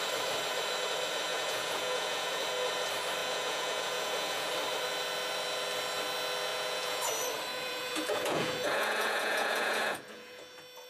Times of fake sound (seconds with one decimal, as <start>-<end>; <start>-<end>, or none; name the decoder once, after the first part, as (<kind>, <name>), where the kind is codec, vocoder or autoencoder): 1.3-2.4 (vocoder, Vocos); 3.2-4.5; 6.5-7.0; 7.5-10.4